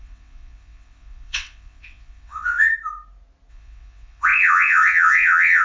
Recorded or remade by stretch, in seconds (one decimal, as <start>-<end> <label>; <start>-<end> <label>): 0.0-2.7 remade; 2.7-3.5 recorded; 3.5-5.6 remade